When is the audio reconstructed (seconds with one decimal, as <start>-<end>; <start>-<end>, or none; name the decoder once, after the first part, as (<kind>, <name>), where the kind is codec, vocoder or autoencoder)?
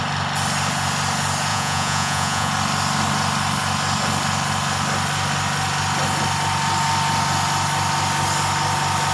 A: 1.5-2.5 (vocoder, Vocos)